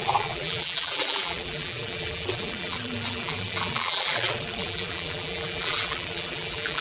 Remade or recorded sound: remade